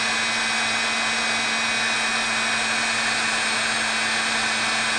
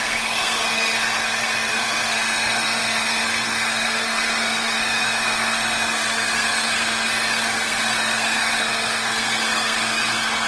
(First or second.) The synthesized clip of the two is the second